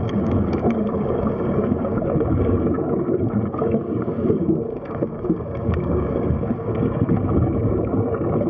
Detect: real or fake fake